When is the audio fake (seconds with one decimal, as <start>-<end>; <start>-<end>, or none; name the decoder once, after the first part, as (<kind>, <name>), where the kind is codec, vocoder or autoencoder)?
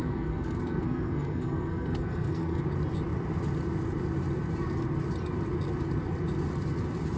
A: 0.0-2.6 (codec, SNAC)